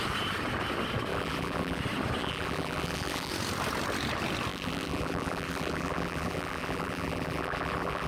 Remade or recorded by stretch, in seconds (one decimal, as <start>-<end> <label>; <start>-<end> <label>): 0.0-1.1 recorded; 1.1-1.8 remade; 1.8-2.2 recorded; 2.2-3.3 remade; 3.3-4.5 recorded; 4.5-8.1 remade